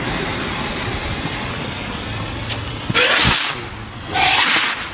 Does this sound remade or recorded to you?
recorded